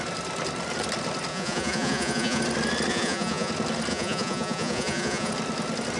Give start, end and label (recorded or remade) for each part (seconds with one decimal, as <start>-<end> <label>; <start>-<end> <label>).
0.0-1.3 recorded; 1.3-2.4 remade; 2.4-2.9 recorded; 2.9-3.5 remade; 3.5-3.9 recorded; 3.9-5.3 remade; 5.3-6.0 recorded